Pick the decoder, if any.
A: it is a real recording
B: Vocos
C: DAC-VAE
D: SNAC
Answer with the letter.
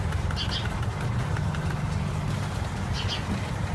A